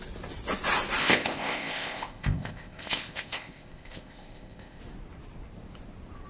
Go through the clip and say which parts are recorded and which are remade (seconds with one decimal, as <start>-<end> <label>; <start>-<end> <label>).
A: 0.0-1.0 recorded; 1.0-4.8 remade; 4.8-6.3 recorded

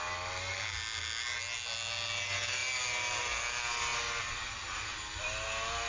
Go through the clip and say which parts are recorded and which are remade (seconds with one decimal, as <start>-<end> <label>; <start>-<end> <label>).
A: 0.0-5.9 recorded